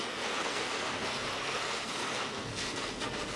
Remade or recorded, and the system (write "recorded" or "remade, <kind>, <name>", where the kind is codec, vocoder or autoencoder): remade, codec, SNAC